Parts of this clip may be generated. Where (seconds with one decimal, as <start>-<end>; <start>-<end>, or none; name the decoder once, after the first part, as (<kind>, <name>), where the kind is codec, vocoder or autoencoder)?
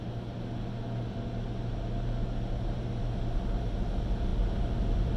none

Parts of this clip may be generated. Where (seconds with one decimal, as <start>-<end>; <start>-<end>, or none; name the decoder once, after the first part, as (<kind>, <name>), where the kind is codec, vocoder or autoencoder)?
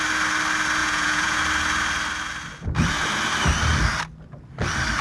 0.8-1.4 (vocoder, Vocos)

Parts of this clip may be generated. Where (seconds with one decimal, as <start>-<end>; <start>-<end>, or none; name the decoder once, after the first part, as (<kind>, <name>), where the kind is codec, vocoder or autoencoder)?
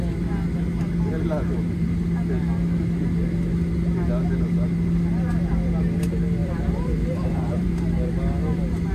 6.4-7.7 (vocoder, BigVGAN v2)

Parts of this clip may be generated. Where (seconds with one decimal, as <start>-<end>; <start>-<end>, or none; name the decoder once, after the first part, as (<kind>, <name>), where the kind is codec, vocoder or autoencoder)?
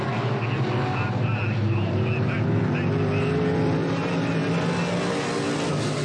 none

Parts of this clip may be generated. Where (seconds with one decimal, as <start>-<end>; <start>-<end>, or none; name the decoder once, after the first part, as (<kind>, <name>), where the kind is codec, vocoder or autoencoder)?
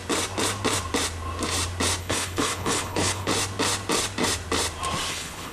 2.0-3.3 (codec, HILCodec); 5.1-5.5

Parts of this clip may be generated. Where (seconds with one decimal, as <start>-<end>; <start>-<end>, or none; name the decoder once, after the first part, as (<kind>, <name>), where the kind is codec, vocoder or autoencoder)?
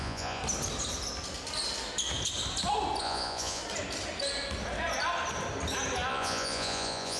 0.0-0.4 (vocoder, Vocos); 3.0-3.6; 6.1-7.2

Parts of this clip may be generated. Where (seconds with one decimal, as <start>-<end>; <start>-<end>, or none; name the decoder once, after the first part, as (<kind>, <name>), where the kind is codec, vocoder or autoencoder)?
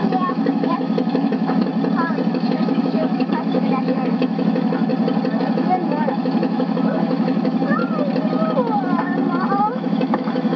0.0-1.7 (autoencoder, DAC-VAE); 2.3-4.9; 5.4-7.8; 9.6-10.6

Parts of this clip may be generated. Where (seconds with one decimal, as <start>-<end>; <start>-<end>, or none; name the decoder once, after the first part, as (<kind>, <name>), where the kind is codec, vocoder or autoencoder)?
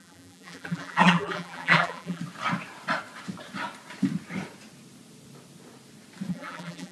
0.0-2.2 (vocoder, BigVGAN v2); 6.3-6.9